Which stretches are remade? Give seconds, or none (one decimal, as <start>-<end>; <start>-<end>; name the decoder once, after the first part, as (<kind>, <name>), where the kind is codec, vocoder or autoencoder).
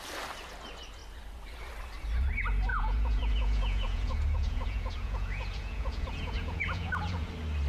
2.7-7.3 (vocoder, Vocos)